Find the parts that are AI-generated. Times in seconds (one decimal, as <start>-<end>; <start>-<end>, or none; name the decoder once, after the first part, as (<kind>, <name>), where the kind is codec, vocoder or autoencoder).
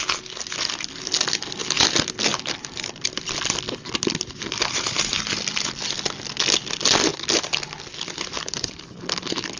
none